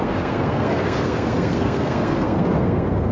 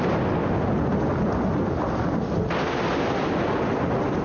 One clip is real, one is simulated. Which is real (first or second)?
second